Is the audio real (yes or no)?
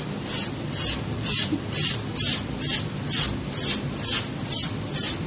no